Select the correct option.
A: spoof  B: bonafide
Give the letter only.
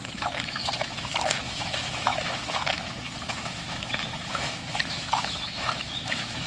A